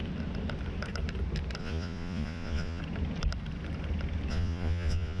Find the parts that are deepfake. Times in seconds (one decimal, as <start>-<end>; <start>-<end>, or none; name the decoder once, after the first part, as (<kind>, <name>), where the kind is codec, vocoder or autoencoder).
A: 1.6-2.8 (vocoder, Vocos); 4.3-5.2